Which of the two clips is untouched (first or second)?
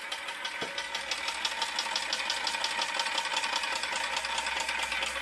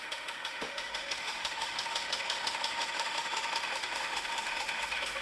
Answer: first